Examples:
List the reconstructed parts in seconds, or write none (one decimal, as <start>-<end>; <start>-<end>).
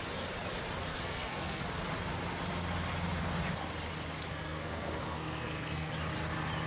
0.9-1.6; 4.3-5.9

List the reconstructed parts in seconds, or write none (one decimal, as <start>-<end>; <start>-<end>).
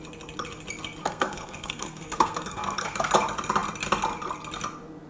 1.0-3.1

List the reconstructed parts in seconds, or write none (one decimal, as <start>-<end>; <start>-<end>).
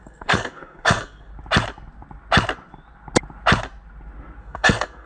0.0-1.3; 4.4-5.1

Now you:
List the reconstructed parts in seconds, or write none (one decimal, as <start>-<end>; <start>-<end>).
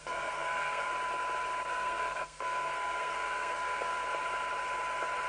0.0-0.9; 1.7-4.0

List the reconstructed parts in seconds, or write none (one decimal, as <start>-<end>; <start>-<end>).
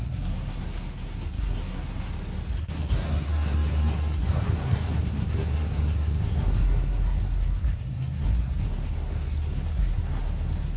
0.0-2.1; 2.6-10.8